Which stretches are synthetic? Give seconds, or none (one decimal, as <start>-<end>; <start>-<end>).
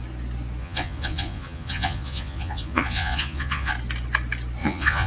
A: 0.6-3.7; 4.6-5.1